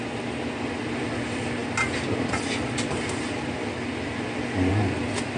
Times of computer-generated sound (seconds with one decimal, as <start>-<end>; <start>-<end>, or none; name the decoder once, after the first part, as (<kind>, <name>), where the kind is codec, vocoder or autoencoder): none

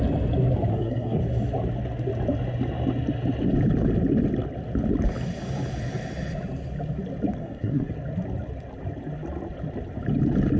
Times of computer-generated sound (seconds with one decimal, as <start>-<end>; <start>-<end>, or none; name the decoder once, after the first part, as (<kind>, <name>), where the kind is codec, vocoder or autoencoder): 0.7-1.2 (codec, SNAC); 7.4-7.9

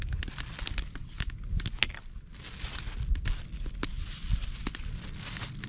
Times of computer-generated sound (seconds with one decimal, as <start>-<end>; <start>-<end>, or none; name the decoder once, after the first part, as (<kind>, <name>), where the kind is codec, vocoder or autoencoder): none

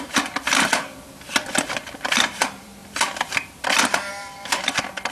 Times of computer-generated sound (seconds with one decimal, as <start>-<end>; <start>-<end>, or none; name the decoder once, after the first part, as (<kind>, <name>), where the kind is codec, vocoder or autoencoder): 0.0-5.1 (vocoder, BigVGAN v2)

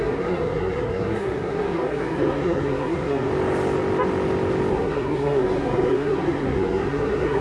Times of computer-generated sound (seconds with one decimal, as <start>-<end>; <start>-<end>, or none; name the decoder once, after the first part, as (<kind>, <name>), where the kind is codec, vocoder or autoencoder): 0.0-3.3 (codec, SNAC); 4.7-7.4

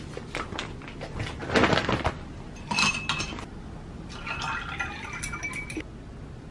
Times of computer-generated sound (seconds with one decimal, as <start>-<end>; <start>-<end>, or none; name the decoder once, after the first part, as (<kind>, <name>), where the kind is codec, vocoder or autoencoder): none